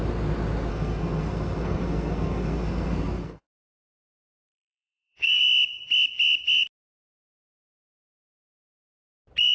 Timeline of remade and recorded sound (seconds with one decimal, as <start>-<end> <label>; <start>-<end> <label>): 0.0-0.7 recorded; 0.7-5.4 remade; 5.4-9.5 recorded